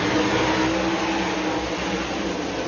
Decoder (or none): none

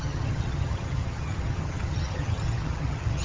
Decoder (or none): vocoder, HiFi-GAN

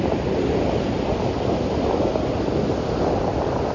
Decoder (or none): none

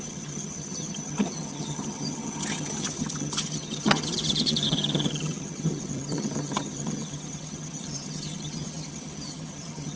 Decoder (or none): vocoder, HiFi-GAN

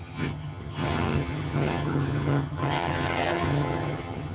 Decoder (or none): vocoder, HiFi-GAN